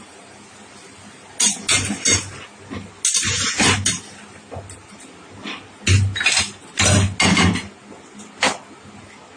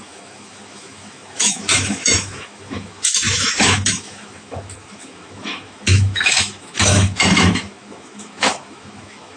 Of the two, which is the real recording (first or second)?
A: first